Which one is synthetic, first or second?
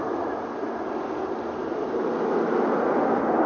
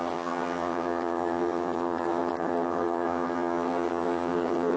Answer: second